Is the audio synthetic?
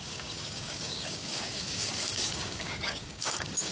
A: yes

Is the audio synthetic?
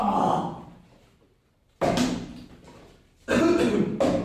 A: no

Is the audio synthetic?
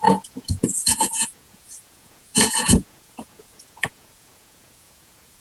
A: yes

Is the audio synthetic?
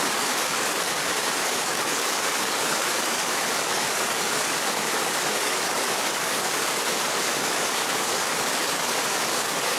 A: yes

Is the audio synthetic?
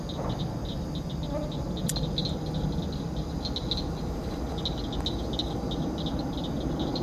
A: no